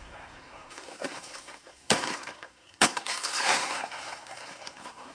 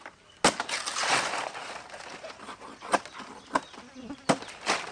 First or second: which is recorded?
second